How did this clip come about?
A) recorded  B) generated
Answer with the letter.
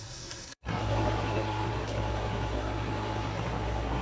B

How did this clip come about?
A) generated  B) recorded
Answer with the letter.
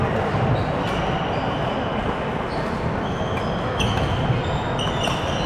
B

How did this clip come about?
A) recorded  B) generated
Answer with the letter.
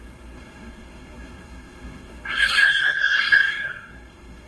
B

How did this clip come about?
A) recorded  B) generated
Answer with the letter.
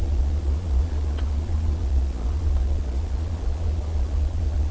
B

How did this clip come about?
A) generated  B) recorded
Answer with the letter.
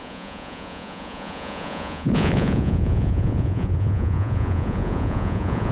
A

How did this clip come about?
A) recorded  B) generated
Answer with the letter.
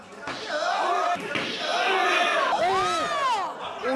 A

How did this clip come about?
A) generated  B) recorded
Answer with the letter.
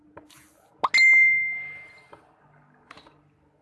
B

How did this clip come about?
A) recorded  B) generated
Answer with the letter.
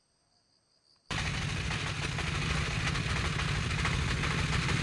A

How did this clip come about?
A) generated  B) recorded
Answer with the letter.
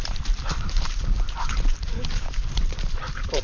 A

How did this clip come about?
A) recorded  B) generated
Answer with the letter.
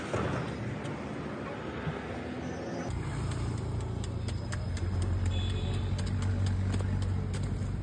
A